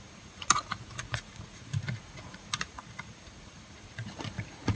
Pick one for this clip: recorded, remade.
remade